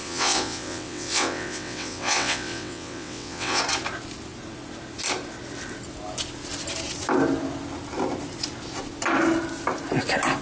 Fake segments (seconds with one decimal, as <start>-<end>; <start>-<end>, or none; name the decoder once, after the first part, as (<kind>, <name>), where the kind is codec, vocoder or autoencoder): 0.0-3.6 (vocoder, WaveNeXt)